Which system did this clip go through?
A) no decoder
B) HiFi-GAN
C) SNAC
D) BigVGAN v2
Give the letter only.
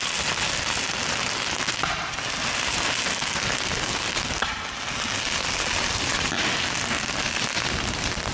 A